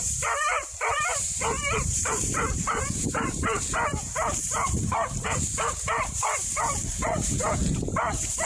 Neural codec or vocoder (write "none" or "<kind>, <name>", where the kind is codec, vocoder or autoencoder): vocoder, BigVGAN v2